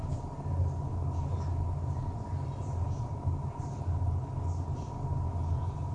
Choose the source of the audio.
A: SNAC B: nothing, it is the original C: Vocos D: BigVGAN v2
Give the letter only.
B